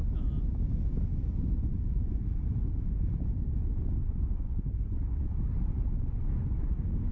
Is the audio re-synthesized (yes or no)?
no